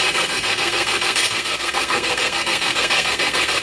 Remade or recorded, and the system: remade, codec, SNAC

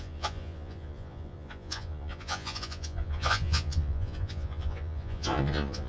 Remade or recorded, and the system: remade, vocoder, Vocos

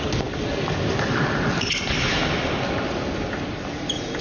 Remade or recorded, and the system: recorded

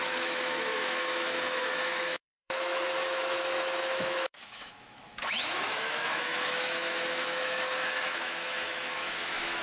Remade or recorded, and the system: remade, autoencoder, DAC-VAE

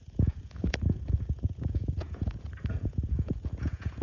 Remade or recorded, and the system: remade, vocoder, Vocos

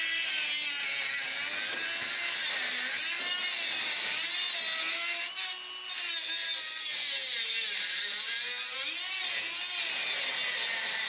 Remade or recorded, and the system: recorded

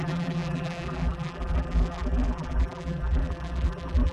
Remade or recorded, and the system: remade, vocoder, BigVGAN v2